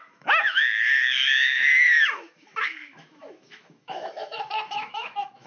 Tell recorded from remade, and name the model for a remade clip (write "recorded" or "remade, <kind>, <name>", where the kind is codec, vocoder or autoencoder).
remade, autoencoder, DAC-VAE